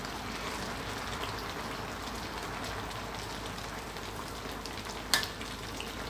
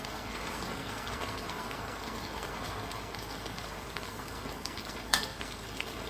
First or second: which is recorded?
first